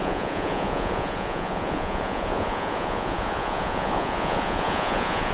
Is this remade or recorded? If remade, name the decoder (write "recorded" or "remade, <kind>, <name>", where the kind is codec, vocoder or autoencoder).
remade, vocoder, Vocos